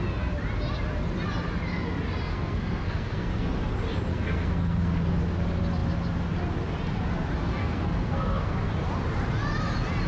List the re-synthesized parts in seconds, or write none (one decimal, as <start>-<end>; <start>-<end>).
2.3-3.6; 4.1-5.0; 7.6-8.7